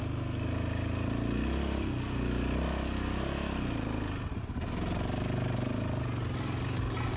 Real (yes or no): yes